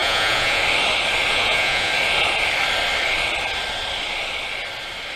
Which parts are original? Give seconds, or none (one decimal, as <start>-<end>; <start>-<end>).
0.6-1.3; 1.9-5.2